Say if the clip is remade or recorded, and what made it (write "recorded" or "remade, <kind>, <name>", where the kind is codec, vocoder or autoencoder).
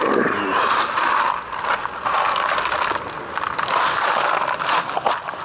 recorded